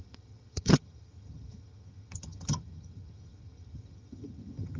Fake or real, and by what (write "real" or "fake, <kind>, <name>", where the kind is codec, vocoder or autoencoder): fake, vocoder, HiFi-GAN